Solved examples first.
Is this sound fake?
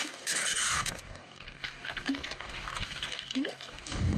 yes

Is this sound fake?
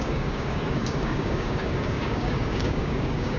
yes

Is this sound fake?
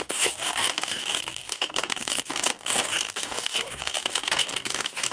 yes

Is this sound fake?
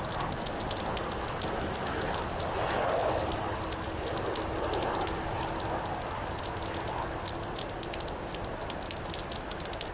no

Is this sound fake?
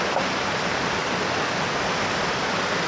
no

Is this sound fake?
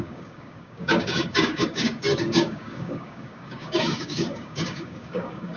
yes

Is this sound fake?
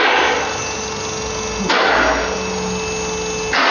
no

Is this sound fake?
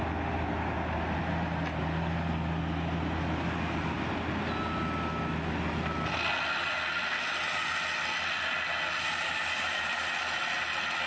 no